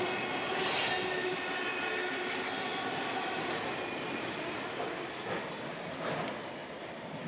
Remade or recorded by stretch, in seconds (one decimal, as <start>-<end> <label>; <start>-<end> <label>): 0.0-7.3 recorded